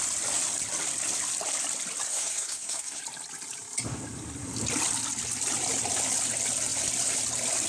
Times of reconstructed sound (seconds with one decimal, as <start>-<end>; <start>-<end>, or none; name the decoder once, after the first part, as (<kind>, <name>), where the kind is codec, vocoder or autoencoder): 2.1-3.0 (codec, SNAC)